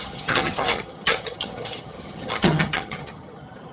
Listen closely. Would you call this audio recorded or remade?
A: remade